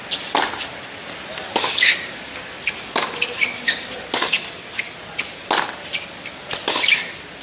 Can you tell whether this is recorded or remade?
recorded